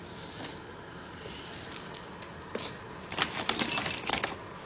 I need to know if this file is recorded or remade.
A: recorded